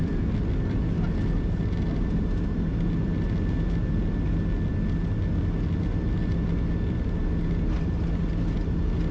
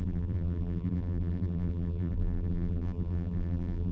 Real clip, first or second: first